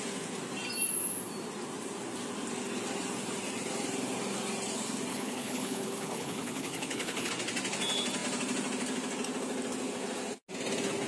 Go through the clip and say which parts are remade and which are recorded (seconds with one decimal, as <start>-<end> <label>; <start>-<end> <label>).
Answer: 0.0-5.1 recorded; 5.1-7.3 remade; 7.3-11.1 recorded